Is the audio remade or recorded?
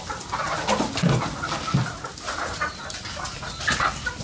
recorded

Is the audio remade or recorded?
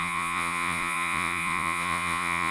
remade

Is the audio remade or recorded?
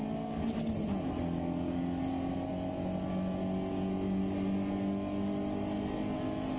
recorded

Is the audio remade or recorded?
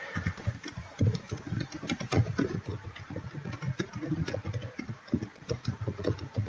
remade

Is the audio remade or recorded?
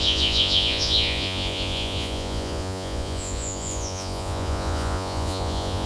remade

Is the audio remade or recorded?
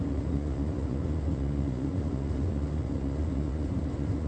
remade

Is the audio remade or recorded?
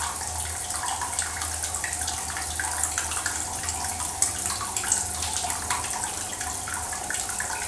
recorded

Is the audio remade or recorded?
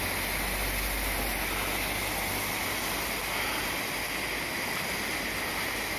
recorded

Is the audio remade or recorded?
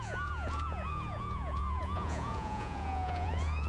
remade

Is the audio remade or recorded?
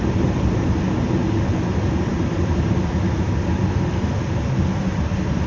recorded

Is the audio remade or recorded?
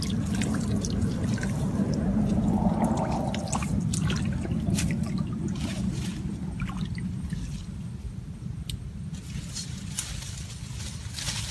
recorded